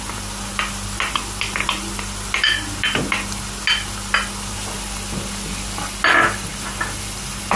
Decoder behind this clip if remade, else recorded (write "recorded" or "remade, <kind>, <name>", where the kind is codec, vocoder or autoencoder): recorded